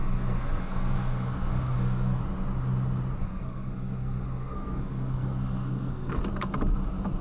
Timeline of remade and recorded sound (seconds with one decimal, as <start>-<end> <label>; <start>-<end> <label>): 0.0-2.2 remade; 2.2-3.2 recorded; 3.2-6.2 remade; 6.2-7.2 recorded